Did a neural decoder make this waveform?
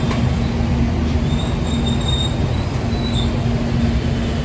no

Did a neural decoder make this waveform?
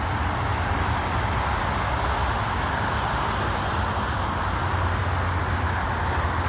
no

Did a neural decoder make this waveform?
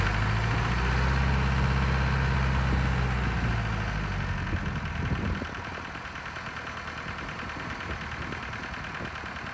no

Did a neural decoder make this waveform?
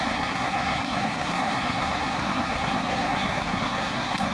yes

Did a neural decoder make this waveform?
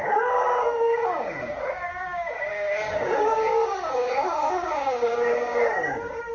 yes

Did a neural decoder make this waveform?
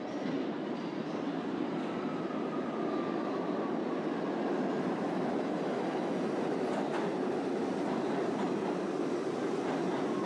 no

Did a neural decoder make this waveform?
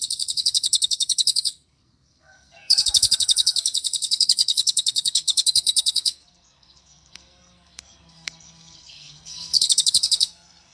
yes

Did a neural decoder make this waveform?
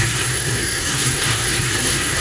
yes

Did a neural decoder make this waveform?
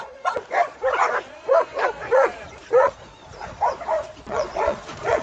yes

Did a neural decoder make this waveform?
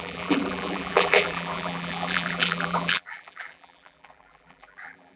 yes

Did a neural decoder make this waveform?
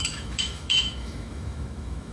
yes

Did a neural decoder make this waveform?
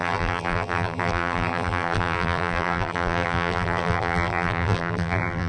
yes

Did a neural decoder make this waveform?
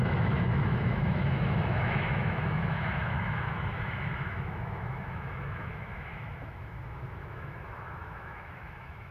yes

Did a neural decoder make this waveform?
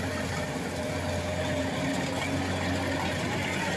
no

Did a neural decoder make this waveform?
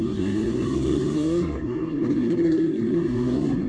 yes